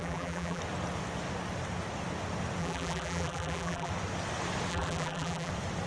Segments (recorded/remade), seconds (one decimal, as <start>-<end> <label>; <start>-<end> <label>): 0.0-0.6 remade; 0.6-2.6 recorded; 2.6-3.9 remade; 3.9-4.7 recorded; 4.7-5.5 remade; 5.5-5.9 recorded